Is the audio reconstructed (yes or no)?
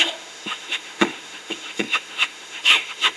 yes